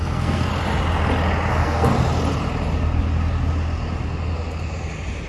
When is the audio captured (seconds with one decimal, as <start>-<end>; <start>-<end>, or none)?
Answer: 0.5-1.5; 1.9-5.3